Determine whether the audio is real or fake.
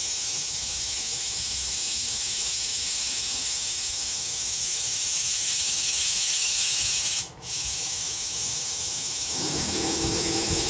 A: fake